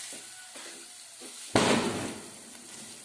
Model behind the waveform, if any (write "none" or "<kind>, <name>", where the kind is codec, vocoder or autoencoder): none